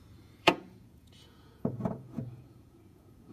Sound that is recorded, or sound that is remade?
remade